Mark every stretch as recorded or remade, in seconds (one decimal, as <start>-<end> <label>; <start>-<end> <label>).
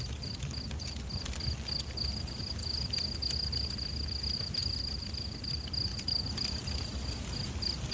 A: 0.0-4.6 recorded; 4.6-5.5 remade; 5.5-5.9 recorded; 5.9-6.9 remade; 6.9-7.9 recorded